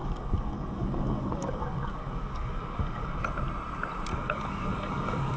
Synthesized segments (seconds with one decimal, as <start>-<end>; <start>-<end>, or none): 0.0-3.2; 4.1-5.4